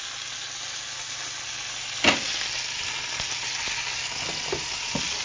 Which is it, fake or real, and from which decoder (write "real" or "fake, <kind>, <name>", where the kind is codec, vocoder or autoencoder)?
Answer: real